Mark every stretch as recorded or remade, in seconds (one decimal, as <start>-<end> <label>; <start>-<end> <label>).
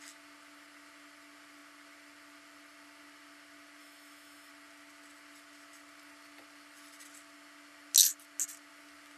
0.0-3.8 recorded; 3.8-4.5 remade; 4.5-9.2 recorded